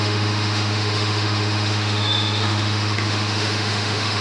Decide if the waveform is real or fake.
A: fake